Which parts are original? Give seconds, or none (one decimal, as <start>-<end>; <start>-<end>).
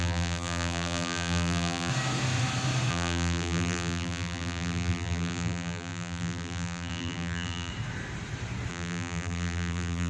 1.9-2.9; 7.7-8.7